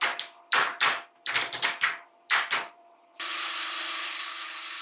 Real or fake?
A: fake